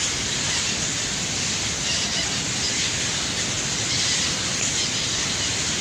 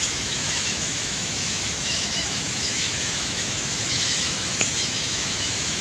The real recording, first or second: first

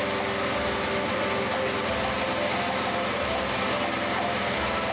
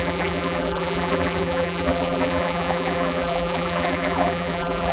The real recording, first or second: first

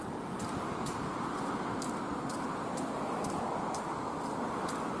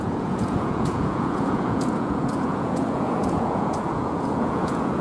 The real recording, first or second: first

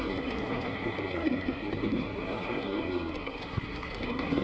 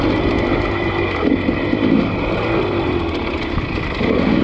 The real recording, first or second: second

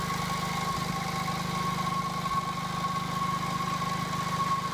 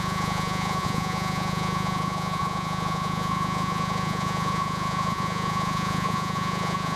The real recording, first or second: first